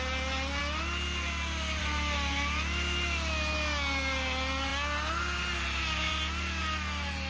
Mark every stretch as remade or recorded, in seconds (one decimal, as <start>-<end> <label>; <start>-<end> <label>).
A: 0.0-7.3 recorded